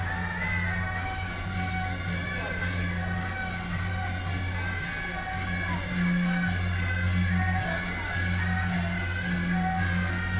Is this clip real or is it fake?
real